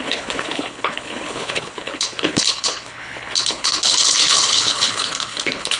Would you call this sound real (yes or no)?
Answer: no